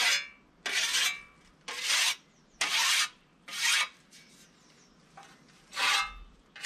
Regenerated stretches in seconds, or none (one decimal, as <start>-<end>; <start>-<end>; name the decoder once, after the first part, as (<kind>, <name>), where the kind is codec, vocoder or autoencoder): none